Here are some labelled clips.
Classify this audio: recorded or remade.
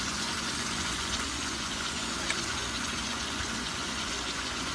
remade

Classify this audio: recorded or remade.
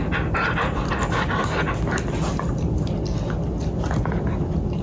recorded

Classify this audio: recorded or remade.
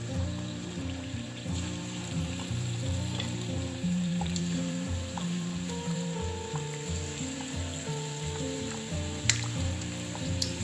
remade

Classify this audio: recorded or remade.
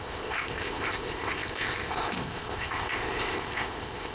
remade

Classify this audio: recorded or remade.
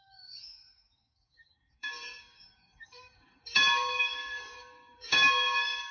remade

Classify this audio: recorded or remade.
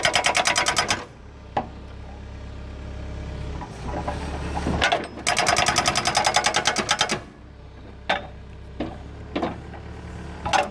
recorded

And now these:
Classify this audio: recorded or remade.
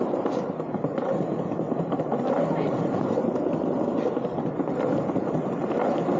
recorded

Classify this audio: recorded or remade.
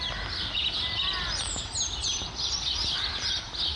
recorded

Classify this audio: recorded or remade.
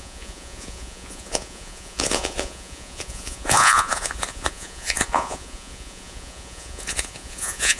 remade